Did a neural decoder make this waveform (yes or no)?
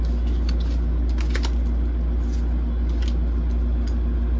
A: no